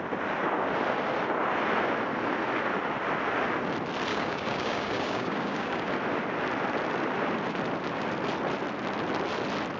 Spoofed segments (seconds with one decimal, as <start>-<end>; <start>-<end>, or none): 4.1-5.9